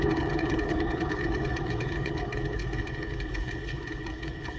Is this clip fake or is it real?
fake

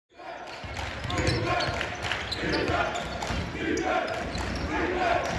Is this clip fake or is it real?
real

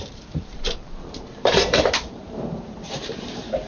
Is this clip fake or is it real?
fake